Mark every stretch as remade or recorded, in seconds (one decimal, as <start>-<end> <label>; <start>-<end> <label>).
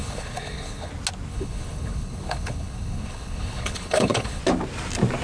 0.0-0.9 remade; 0.9-1.3 recorded; 1.3-4.4 remade; 4.4-5.2 recorded